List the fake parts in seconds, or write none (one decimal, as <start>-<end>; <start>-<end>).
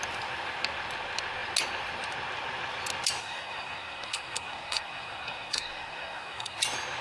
3.2-6.6